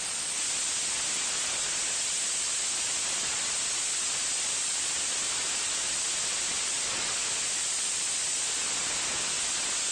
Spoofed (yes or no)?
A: no